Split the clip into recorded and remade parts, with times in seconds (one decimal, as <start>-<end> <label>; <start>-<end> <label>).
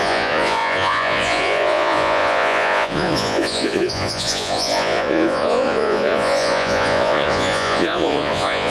0.0-8.7 remade